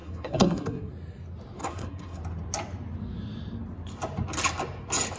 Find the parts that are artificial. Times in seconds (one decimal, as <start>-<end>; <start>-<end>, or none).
0.0-0.9; 1.6-2.2